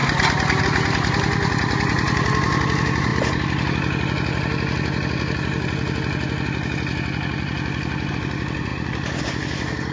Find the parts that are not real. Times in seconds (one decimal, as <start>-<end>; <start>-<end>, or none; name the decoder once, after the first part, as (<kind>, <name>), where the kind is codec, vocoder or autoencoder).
none